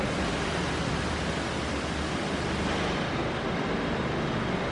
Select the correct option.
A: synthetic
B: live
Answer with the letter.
B